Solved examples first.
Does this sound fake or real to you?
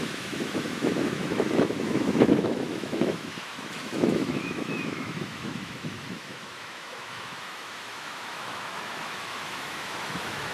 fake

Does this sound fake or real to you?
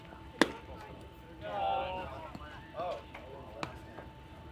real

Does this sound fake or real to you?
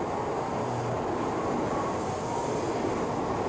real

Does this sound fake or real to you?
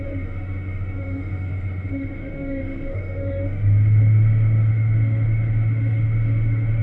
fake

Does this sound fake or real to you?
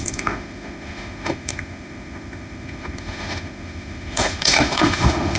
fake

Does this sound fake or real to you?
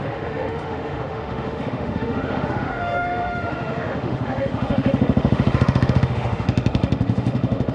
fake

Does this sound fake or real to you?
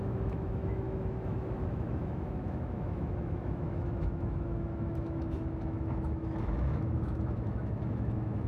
fake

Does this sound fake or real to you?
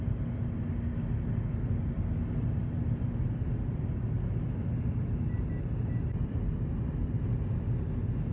real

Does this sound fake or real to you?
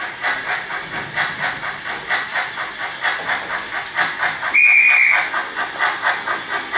real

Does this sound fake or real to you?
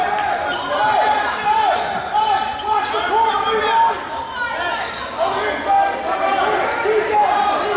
real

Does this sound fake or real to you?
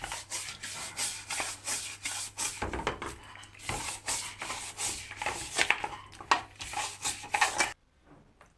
real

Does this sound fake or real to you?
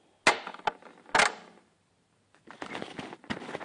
real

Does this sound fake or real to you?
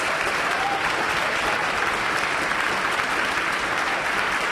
real